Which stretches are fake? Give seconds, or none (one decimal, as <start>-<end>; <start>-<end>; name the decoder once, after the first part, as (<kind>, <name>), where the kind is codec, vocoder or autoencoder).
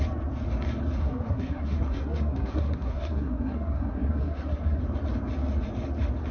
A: 1.0-4.8 (codec, SNAC)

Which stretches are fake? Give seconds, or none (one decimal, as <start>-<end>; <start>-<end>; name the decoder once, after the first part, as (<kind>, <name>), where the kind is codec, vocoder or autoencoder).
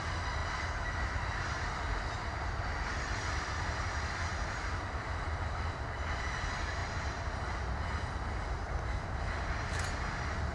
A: none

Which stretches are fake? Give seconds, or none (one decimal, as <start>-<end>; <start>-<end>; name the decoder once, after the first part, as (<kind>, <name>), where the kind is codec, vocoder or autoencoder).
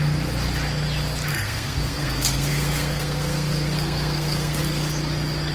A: 1.3-4.6 (codec, SNAC)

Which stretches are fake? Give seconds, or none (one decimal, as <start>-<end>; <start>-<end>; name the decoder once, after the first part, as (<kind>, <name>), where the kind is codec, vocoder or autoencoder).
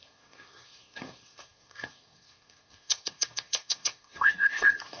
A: 0.0-5.0 (codec, SNAC)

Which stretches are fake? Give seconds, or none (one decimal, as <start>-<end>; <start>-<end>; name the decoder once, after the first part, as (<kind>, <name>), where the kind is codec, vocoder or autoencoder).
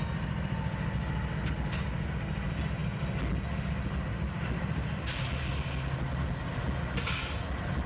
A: none